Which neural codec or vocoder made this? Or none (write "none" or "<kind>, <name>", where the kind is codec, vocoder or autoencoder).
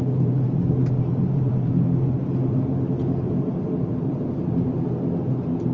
vocoder, BigVGAN v2